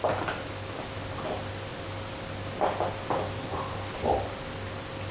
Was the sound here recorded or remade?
recorded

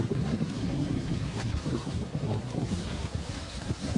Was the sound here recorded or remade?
remade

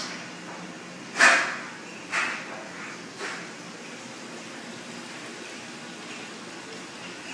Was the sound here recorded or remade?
recorded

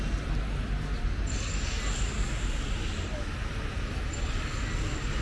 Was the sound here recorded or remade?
recorded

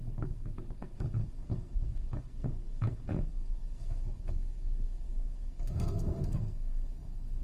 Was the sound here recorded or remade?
remade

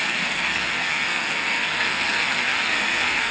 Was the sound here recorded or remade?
remade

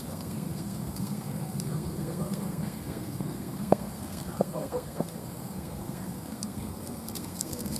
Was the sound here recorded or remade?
remade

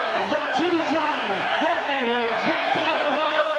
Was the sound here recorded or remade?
remade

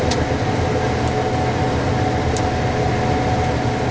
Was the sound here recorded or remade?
recorded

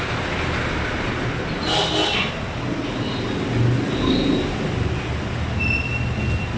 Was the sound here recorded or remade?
recorded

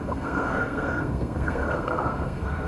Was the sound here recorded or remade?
remade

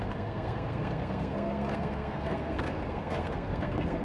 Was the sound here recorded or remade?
remade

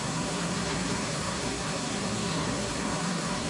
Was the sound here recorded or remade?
remade